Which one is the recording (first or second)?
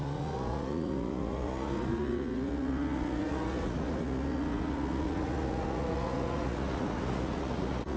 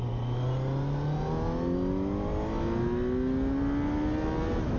second